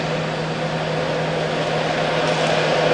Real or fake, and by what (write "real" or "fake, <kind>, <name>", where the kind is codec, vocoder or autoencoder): real